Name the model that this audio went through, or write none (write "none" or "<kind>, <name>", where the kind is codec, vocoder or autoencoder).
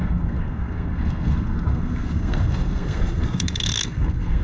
codec, SNAC